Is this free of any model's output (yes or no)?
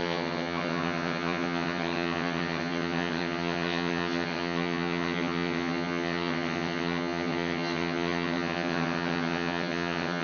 no